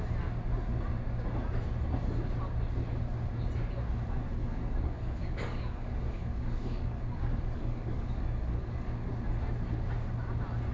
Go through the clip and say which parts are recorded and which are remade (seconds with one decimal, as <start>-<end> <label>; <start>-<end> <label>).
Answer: 0.0-4.4 recorded; 4.4-9.1 remade; 9.1-10.7 recorded